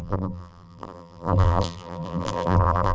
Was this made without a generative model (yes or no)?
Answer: no